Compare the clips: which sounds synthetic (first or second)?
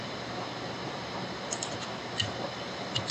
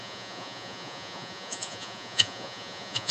second